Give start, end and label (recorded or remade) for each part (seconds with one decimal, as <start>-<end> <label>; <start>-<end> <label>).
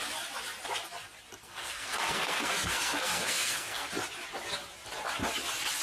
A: 0.0-1.4 recorded; 1.4-3.9 remade; 3.9-5.8 recorded